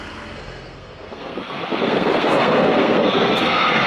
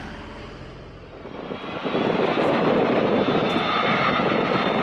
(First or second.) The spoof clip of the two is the first